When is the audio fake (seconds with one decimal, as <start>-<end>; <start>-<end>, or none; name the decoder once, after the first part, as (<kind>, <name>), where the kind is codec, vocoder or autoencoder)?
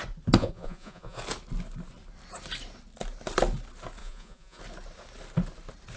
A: 0.4-1.2 (vocoder, Vocos); 4.0-4.6